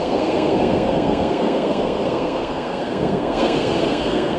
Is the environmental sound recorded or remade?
remade